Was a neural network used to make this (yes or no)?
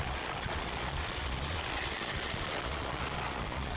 yes